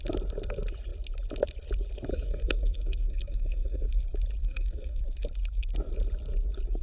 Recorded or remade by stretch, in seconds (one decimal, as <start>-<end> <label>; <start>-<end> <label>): 0.0-2.1 recorded; 2.1-4.0 remade; 4.0-4.4 recorded; 4.4-5.0 remade; 5.0-6.8 recorded